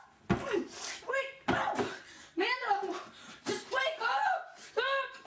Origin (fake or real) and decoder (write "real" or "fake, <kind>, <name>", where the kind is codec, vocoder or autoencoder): real